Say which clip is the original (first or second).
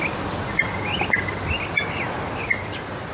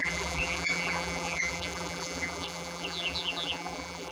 first